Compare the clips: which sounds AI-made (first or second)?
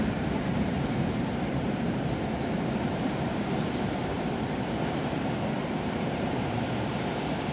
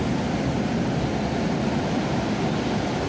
first